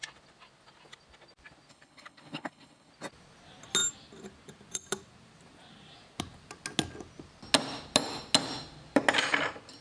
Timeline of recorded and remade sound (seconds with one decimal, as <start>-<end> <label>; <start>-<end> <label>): 0.0-1.7 recorded; 1.7-2.9 remade; 2.9-9.8 recorded